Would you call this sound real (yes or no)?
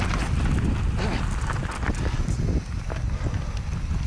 yes